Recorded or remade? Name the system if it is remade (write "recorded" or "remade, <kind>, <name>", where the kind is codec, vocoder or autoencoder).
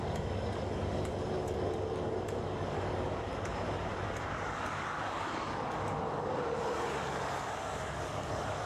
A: remade, codec, DAC